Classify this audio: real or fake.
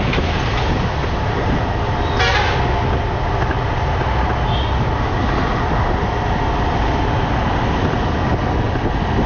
real